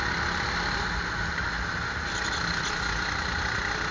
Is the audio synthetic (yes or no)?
no